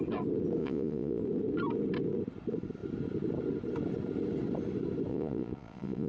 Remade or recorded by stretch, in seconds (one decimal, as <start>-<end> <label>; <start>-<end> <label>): 0.0-0.6 recorded; 0.6-1.2 remade; 1.2-5.1 recorded; 5.1-6.1 remade

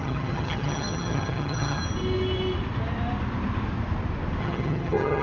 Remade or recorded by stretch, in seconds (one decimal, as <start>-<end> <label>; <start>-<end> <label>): 0.0-1.8 remade; 1.8-4.4 recorded; 4.4-5.2 remade

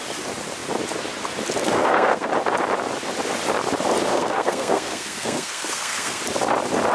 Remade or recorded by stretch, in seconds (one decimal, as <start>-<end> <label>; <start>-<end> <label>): 0.0-1.6 recorded; 1.6-2.3 remade; 2.3-4.1 recorded; 4.1-6.2 remade; 6.2-6.9 recorded

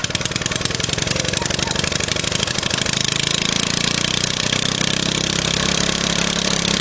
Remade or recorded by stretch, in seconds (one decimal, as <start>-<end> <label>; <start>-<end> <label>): 0.0-4.1 recorded; 4.1-6.8 remade

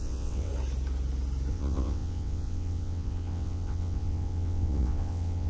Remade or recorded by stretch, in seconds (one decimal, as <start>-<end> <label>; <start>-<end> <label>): 0.0-0.5 remade; 0.5-1.5 recorded; 1.5-5.5 remade

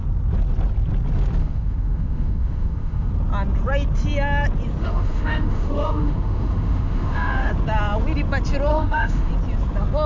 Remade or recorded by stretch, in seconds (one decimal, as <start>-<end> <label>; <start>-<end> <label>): 0.0-1.4 recorded; 1.4-3.1 remade; 3.1-4.8 recorded; 4.8-7.5 remade; 7.5-8.7 recorded; 8.7-9.3 remade; 9.3-10.1 recorded

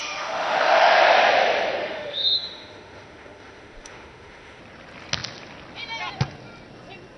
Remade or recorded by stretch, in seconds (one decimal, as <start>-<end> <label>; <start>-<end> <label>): 0.0-1.0 remade; 1.0-1.8 recorded; 1.8-4.6 remade; 4.6-7.2 recorded